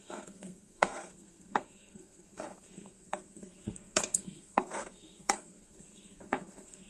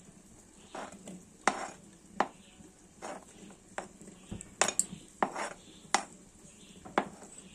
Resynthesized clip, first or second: first